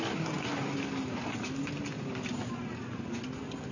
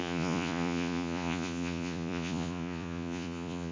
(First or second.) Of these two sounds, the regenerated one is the second